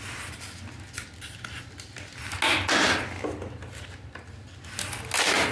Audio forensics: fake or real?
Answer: real